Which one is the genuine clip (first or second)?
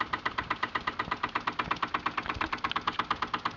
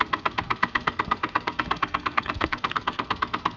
first